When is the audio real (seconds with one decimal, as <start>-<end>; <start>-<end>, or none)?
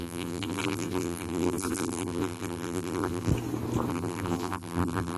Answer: 3.3-3.9